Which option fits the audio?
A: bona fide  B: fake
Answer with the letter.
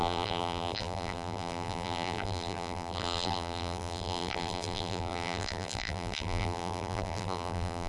B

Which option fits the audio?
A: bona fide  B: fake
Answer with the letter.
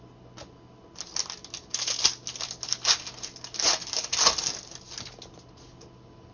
A